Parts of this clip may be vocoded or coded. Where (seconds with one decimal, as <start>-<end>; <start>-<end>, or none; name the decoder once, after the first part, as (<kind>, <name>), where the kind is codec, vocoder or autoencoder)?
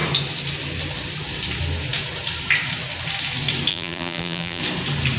3.7-4.6 (vocoder, BigVGAN v2)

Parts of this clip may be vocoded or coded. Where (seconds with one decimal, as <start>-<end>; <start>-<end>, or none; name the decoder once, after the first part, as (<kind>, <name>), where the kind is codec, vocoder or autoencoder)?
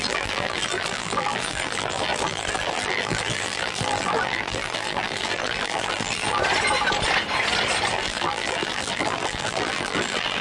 0.0-6.4 (vocoder, BigVGAN v2); 7.9-10.4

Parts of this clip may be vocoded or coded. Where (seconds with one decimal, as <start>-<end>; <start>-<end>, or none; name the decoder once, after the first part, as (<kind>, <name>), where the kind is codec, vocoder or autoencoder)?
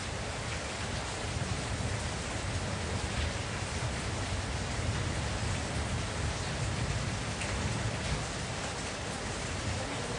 none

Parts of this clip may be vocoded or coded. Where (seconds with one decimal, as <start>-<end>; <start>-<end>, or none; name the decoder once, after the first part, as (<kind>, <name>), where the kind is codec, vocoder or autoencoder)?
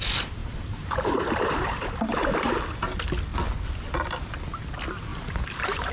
0.4-2.2 (vocoder, BigVGAN v2); 5.1-5.9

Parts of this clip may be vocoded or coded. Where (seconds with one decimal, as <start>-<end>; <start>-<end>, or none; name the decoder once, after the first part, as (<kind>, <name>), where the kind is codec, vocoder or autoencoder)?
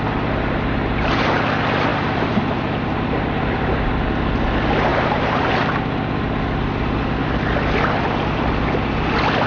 1.9-3.9 (vocoder, BigVGAN v2); 4.9-5.5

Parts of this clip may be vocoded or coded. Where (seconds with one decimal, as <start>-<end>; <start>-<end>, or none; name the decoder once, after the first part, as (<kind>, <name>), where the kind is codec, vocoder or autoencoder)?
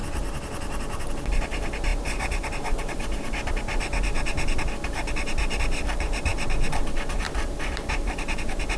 1.1-8.8 (vocoder, BigVGAN v2)